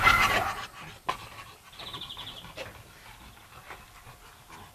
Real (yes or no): yes